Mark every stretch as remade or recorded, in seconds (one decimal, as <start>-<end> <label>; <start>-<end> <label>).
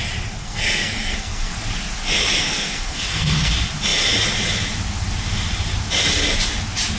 0.0-0.4 recorded; 0.4-1.5 remade; 1.5-2.4 recorded; 2.4-3.5 remade; 3.5-7.0 recorded